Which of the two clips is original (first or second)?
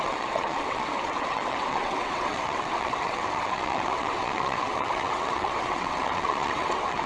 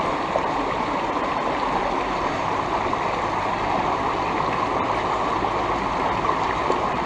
second